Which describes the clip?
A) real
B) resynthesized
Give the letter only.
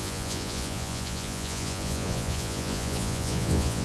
B